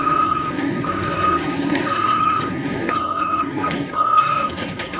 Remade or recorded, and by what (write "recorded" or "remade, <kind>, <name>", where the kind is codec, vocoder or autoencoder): remade, codec, SNAC